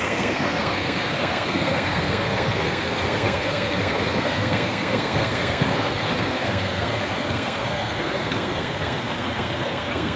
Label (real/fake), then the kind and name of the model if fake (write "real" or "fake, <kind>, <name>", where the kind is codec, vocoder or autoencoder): fake, codec, SNAC